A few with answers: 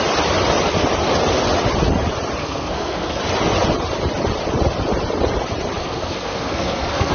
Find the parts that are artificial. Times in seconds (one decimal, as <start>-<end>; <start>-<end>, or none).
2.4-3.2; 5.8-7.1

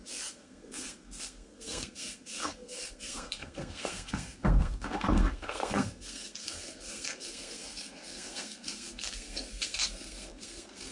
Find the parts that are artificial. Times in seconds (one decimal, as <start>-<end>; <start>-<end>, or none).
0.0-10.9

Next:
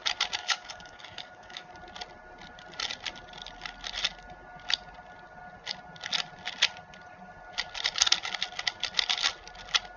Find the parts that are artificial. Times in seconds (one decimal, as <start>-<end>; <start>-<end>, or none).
0.4-1.7

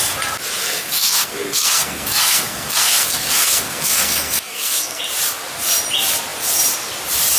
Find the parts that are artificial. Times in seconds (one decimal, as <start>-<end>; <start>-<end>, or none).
0.6-5.0

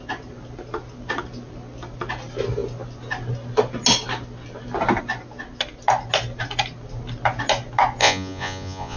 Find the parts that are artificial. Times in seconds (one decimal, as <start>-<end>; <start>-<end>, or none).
8.0-9.0

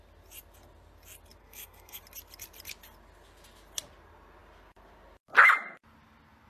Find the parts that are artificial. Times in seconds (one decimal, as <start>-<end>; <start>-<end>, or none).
1.4-2.0